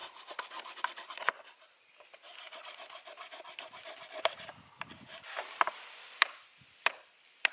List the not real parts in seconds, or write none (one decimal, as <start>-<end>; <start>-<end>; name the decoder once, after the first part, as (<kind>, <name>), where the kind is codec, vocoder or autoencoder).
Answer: none